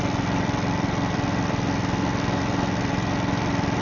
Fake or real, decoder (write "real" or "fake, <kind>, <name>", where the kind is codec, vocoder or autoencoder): real